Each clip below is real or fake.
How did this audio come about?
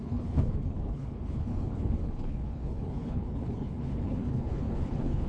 fake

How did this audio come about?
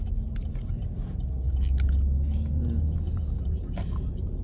real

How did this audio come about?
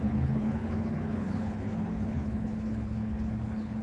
fake